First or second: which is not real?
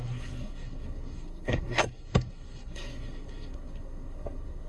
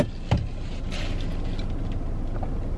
first